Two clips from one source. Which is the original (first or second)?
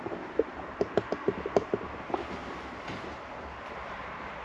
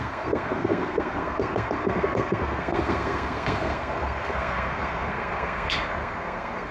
first